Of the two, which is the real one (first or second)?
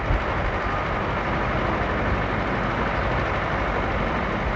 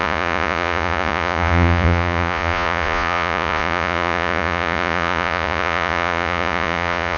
first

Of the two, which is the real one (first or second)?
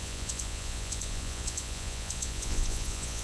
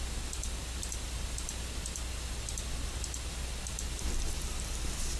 second